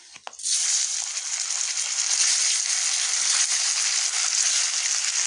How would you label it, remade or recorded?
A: recorded